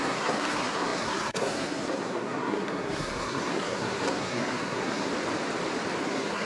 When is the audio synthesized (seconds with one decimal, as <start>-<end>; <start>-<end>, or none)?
0.0-5.1; 6.0-6.5